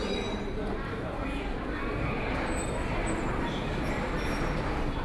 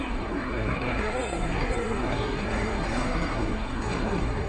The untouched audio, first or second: first